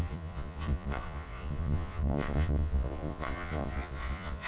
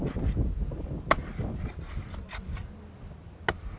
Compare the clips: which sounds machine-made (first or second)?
first